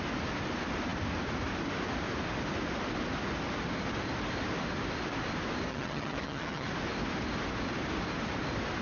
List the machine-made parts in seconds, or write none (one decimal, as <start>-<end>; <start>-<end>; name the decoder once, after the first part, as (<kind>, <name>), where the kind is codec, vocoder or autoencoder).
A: 5.7-6.7 (vocoder, HiFi-GAN)